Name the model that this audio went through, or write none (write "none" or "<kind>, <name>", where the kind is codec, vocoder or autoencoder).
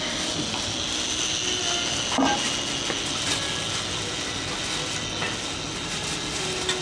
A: none